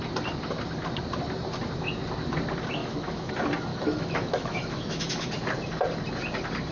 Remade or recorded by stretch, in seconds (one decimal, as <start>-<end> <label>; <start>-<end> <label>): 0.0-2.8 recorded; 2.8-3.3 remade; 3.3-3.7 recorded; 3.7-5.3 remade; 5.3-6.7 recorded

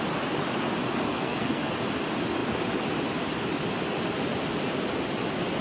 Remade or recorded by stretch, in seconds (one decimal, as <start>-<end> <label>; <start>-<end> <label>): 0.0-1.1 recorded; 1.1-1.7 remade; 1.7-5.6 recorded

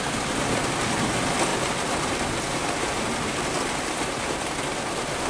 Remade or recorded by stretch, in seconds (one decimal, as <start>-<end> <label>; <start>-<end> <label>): 0.0-1.5 recorded; 1.5-4.7 remade; 4.7-5.3 recorded

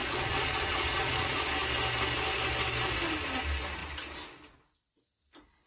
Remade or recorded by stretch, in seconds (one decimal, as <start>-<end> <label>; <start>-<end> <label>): 0.0-1.5 remade; 1.5-5.7 recorded

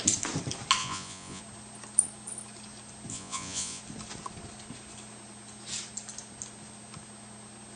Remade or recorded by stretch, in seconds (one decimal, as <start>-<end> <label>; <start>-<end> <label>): 0.0-0.8 recorded; 0.8-1.4 remade; 1.4-3.1 recorded; 3.1-3.8 remade; 3.8-7.8 recorded

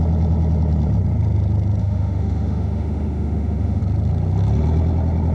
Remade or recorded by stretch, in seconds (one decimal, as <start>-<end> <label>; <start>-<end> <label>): 0.0-1.8 recorded; 1.8-3.8 remade; 3.8-5.3 recorded

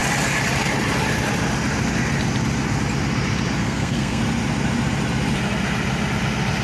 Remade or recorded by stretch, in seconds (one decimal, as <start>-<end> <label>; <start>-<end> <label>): 0.0-3.6 recorded; 3.6-4.2 remade; 4.2-6.6 recorded